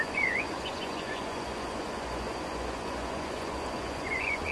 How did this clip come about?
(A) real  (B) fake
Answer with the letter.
B